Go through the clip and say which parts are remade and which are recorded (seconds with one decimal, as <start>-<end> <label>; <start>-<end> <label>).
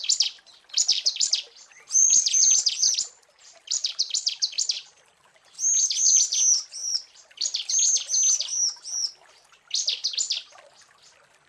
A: 0.0-0.9 recorded; 0.9-5.0 remade; 5.0-6.8 recorded; 6.8-7.7 remade; 7.7-11.5 recorded